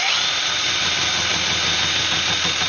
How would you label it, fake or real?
real